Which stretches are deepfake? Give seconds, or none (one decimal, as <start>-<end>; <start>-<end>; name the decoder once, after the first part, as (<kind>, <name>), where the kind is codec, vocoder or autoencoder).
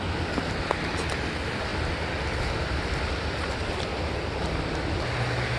none